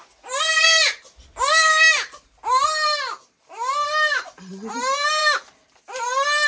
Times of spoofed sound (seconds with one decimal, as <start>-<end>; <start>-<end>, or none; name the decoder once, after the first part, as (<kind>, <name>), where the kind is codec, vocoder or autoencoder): none